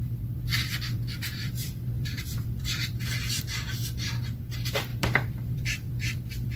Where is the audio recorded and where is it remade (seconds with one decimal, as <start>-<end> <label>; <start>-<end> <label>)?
0.0-1.4 recorded; 1.4-3.5 remade; 3.5-4.9 recorded; 4.9-6.6 remade